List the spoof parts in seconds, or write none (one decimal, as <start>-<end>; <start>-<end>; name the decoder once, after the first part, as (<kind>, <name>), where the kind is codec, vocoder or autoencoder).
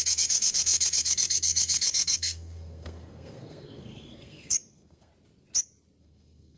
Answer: 0.0-5.1 (codec, SNAC); 6.0-6.6